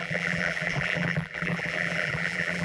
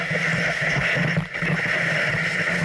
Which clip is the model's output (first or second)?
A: first